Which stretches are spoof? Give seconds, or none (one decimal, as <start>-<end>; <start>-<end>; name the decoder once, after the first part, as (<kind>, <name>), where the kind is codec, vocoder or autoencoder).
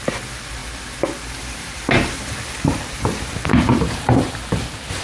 none